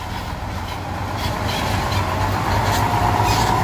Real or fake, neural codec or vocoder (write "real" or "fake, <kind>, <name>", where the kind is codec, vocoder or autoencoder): real